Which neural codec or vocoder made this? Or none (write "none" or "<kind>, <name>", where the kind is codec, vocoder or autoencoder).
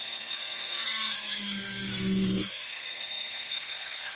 codec, SNAC